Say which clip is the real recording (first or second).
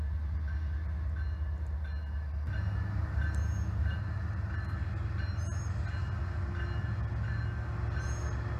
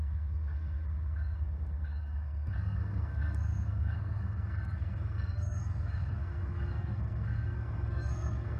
first